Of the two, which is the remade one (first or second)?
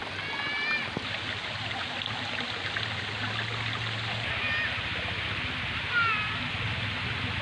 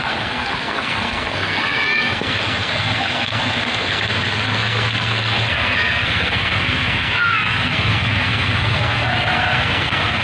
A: second